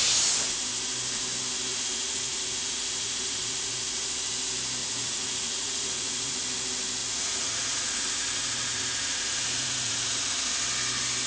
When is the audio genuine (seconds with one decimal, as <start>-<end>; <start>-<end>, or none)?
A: 0.0-1.7; 4.1-4.8; 6.3-7.0; 10.3-11.3